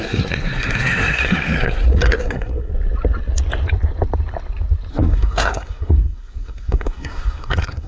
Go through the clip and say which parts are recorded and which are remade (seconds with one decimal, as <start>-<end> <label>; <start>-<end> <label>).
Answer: 0.0-2.7 remade; 2.7-4.9 recorded; 4.9-7.9 remade